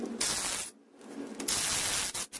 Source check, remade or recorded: recorded